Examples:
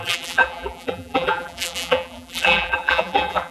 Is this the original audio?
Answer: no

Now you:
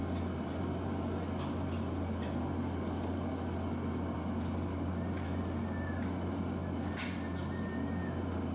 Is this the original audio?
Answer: yes